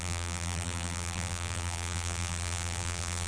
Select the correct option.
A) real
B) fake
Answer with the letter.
B